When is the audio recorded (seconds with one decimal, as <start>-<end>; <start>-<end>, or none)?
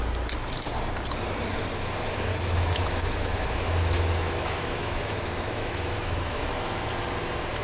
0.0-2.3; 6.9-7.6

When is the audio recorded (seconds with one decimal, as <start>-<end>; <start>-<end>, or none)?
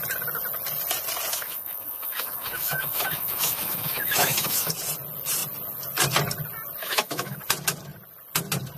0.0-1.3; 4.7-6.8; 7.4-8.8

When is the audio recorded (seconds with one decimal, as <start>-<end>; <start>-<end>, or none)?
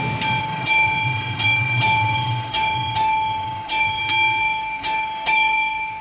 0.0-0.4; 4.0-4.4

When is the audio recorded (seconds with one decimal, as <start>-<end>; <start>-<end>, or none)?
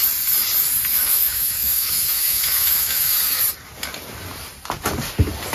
0.0-0.9; 3.4-5.5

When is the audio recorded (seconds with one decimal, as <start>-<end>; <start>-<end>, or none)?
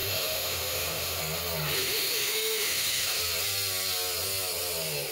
1.2-1.8; 3.2-5.1